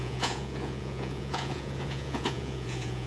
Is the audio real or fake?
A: fake